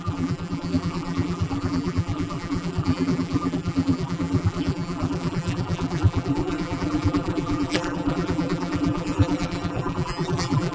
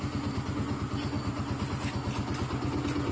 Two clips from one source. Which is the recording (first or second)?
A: second